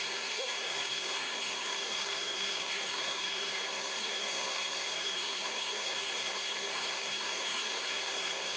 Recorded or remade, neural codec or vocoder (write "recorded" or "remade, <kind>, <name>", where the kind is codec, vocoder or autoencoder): remade, codec, SNAC